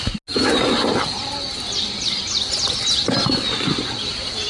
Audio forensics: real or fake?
real